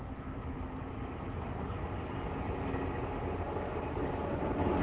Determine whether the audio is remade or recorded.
recorded